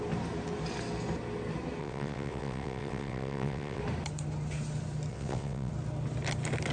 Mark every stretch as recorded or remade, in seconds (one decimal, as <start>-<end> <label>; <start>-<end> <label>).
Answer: 0.0-1.8 recorded; 1.8-3.8 remade; 3.8-5.1 recorded; 5.1-5.7 remade; 5.7-6.7 recorded